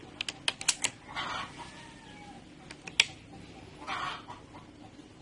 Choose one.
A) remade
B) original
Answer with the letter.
B